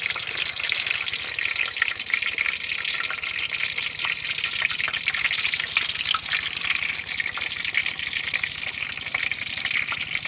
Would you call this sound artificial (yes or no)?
no